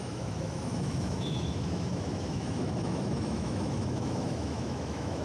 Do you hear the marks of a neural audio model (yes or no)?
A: yes